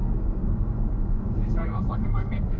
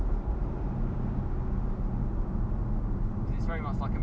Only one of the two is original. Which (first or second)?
second